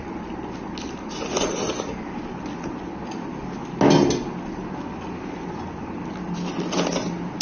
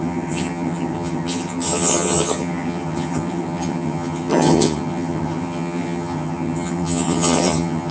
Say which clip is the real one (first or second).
first